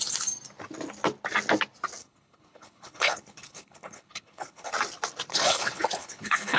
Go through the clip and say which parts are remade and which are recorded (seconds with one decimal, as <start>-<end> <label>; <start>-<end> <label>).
0.0-2.0 recorded; 2.0-4.7 remade; 4.7-5.3 recorded; 5.3-6.6 remade